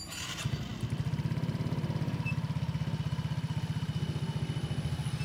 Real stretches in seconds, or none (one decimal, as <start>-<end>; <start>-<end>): 0.0-5.2